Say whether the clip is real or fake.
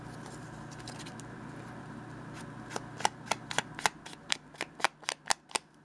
real